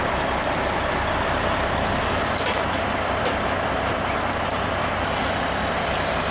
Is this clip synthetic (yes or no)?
no